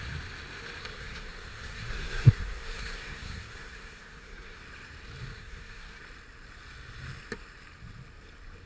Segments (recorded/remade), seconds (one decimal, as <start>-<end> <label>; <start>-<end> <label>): 0.0-0.8 recorded; 0.8-4.6 remade; 4.6-5.3 recorded; 5.3-6.0 remade; 6.0-8.7 recorded